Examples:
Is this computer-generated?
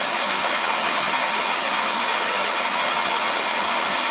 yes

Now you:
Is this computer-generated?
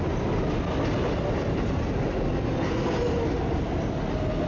no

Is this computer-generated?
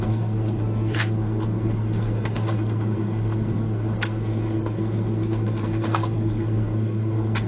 yes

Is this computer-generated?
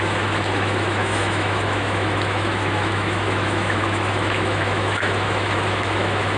yes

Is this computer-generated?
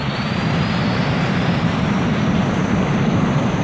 yes